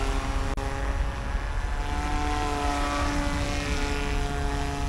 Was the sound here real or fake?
real